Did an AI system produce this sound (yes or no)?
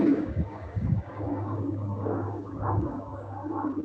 yes